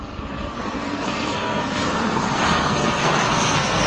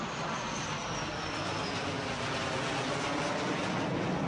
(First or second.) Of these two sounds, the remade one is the first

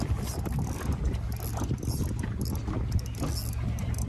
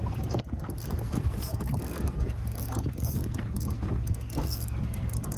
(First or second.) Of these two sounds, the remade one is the second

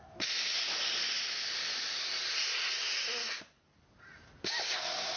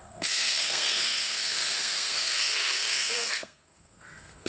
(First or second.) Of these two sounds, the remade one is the second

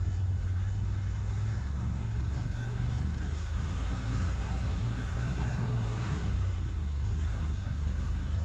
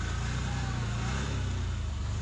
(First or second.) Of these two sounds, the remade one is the first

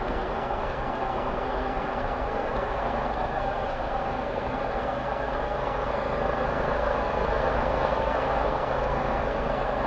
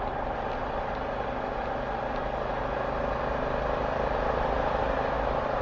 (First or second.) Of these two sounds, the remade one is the first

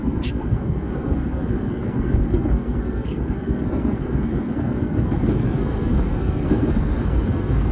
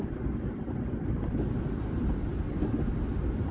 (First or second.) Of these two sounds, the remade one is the first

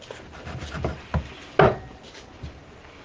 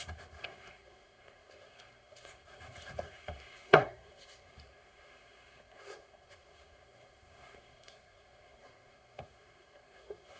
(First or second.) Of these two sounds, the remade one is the second